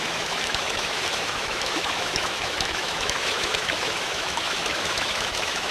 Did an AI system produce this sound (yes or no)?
yes